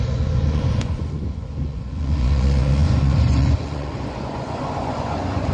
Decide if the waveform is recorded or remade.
remade